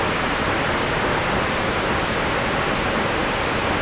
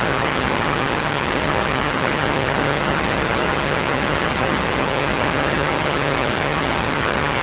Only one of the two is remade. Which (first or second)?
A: second